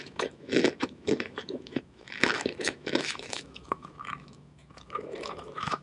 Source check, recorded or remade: remade